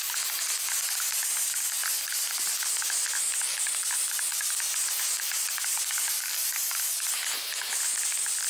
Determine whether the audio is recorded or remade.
recorded